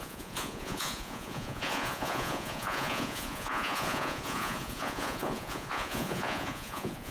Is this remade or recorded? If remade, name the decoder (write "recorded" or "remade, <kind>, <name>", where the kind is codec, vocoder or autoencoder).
remade, vocoder, Vocos